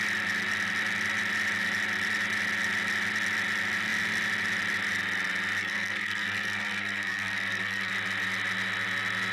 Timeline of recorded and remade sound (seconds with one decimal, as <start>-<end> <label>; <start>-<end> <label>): 0.0-5.6 recorded; 5.6-7.9 remade; 7.9-9.3 recorded